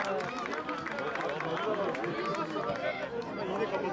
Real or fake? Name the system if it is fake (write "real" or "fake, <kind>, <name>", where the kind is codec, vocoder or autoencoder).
real